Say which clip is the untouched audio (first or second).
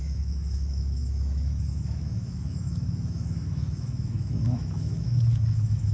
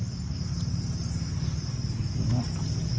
second